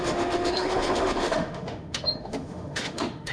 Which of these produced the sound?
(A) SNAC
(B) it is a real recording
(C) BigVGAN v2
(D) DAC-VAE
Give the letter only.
D